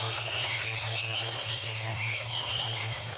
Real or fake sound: fake